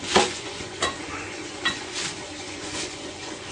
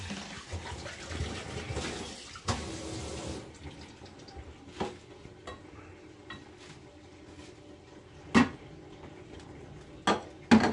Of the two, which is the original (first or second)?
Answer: second